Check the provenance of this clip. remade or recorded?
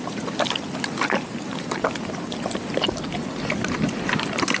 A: recorded